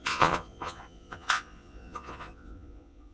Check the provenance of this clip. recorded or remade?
remade